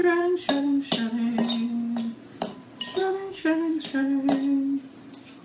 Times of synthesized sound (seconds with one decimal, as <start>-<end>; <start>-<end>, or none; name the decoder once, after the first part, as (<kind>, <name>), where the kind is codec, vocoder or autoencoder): 3.0-3.7 (autoencoder, DAC-VAE)